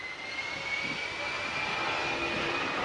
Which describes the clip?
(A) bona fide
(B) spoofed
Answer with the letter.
A